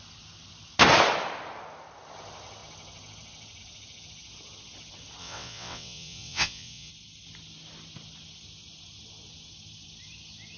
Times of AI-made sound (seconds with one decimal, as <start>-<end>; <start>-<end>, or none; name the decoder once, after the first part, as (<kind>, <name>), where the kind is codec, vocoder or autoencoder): 5.2-6.9 (vocoder, WaveNeXt)

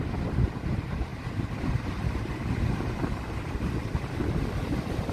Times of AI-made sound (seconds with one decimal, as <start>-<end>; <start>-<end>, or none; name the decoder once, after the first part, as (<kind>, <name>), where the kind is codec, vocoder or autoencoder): 0.0-3.8 (vocoder, BigVGAN v2); 4.6-5.1

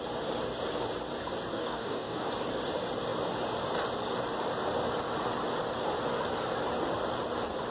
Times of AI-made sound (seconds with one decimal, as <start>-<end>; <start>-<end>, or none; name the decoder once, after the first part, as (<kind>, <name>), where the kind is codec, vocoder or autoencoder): 1.5-2.3 (codec, DAC)

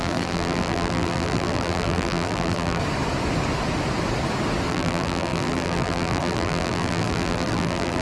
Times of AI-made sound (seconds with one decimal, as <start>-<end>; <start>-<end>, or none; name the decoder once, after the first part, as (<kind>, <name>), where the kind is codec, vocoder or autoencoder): 0.0-2.8 (vocoder, BigVGAN v2); 4.7-8.0

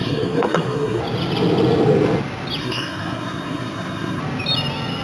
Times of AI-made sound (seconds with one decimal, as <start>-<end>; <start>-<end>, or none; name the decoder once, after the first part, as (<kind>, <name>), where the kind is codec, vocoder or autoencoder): 0.0-1.0 (codec, SNAC); 2.6-4.2

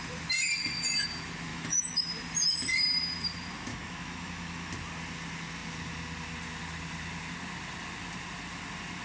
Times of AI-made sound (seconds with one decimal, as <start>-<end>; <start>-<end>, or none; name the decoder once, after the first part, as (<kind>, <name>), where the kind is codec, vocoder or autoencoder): 1.5-2.1 (autoencoder, DAC-VAE); 3.7-4.7

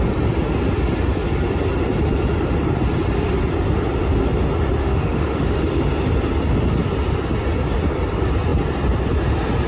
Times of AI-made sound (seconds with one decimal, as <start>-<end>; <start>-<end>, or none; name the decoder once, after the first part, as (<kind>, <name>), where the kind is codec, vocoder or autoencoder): 4.8-5.8 (autoencoder, DAC-VAE)

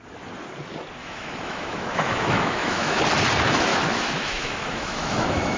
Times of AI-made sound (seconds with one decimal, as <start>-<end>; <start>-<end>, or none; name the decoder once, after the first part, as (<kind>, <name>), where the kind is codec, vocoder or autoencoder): 1.0-3.0 (autoencoder, DAC-VAE); 3.7-5.6